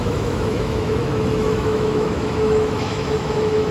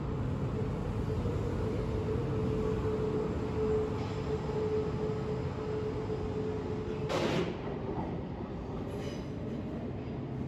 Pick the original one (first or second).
second